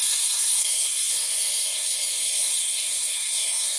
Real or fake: fake